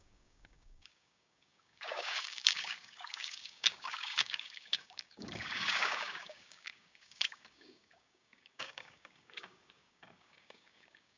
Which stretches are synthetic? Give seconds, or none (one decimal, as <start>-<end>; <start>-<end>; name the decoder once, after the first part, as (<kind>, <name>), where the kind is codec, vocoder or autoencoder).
0.0-11.2 (codec, DAC)